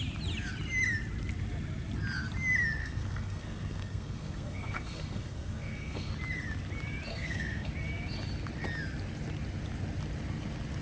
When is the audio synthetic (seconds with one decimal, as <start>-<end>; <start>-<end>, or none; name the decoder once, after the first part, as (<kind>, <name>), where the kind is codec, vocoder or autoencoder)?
2.8-6.1 (codec, SNAC); 7.1-7.7